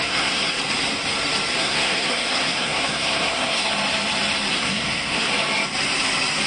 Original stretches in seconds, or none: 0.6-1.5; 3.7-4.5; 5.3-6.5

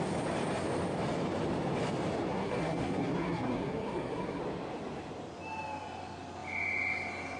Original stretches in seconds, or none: 0.0-2.3; 4.4-7.4